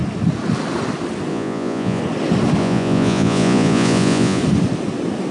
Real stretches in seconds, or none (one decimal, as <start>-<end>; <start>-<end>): 0.0-1.3; 2.0-2.6; 4.4-5.3